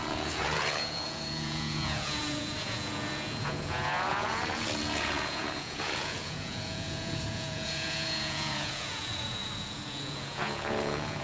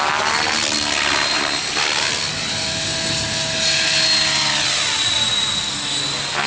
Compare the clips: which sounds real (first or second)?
second